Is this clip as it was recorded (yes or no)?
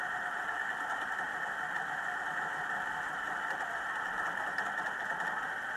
yes